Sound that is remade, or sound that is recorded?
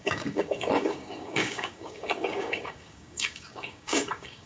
remade